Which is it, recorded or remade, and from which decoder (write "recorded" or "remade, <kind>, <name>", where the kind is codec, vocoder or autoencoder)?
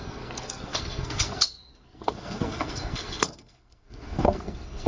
remade, codec, SNAC